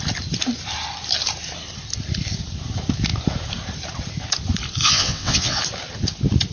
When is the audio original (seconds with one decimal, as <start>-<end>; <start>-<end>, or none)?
0.0-4.8; 5.6-6.5